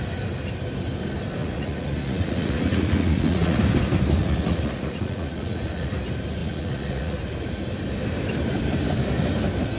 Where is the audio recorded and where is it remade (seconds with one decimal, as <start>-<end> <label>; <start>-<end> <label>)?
0.0-1.4 recorded; 1.4-3.6 remade; 3.6-4.2 recorded; 4.2-5.9 remade; 5.9-6.4 recorded; 6.4-7.2 remade; 7.2-9.8 recorded

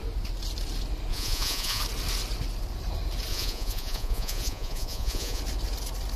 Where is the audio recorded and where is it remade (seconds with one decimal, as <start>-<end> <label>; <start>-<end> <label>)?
0.0-1.1 recorded; 1.1-1.8 remade; 1.8-3.3 recorded; 3.3-5.4 remade; 5.4-6.2 recorded

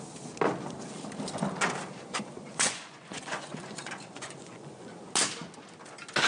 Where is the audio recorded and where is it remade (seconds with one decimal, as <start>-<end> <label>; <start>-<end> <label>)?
0.0-2.5 recorded; 2.5-4.9 remade; 4.9-6.3 recorded

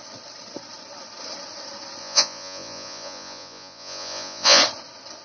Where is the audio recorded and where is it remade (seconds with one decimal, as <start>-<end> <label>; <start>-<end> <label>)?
0.0-2.0 recorded; 2.0-4.6 remade; 4.6-5.2 recorded

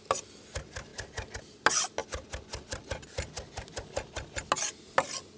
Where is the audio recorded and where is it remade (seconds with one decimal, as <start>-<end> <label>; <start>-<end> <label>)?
0.0-5.4 recorded

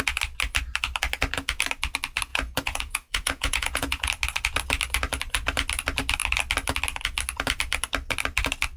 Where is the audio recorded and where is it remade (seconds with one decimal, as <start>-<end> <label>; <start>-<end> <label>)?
0.0-2.3 recorded; 2.3-4.1 remade; 4.1-8.8 recorded